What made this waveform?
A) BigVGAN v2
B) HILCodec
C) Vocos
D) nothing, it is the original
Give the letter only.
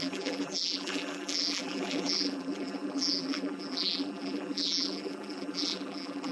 A